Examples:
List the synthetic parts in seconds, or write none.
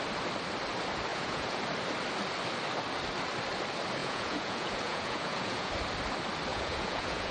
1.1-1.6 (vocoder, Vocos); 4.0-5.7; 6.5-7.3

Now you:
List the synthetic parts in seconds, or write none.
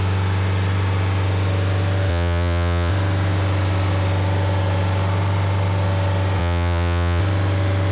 2.1-2.9 (vocoder, Vocos); 6.4-7.2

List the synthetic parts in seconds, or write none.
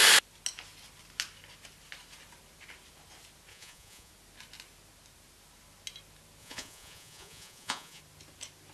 3.5-4.1 (vocoder, Vocos); 6.4-8.0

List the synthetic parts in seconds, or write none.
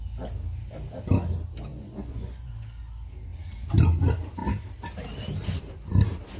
1.7-2.5 (vocoder, Vocos)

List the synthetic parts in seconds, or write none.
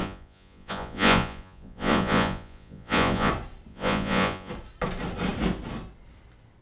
0.0-3.3 (vocoder, Vocos); 3.7-4.5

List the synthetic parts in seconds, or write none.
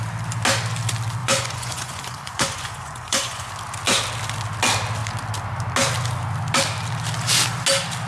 1.2-3.5 (vocoder, Vocos)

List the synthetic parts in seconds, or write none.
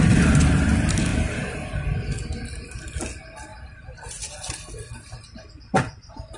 none